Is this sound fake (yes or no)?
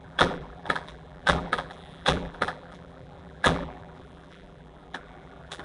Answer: yes